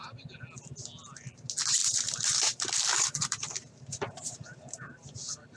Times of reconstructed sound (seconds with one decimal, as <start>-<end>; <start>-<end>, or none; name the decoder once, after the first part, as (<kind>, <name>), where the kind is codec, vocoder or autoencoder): 1.8-5.6 (vocoder, BigVGAN v2)